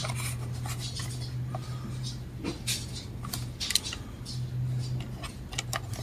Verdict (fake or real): real